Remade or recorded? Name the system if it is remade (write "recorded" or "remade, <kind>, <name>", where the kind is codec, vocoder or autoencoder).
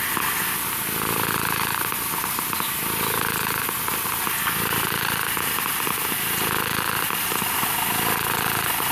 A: recorded